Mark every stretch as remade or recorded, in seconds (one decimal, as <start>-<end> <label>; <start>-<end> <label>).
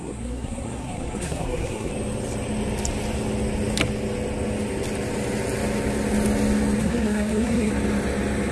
0.0-1.9 remade; 1.9-6.8 recorded; 6.8-7.7 remade; 7.7-8.5 recorded